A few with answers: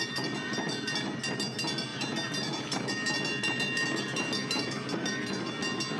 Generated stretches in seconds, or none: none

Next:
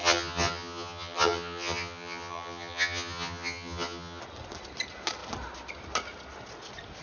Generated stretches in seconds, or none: 0.0-4.2 (vocoder, HiFi-GAN)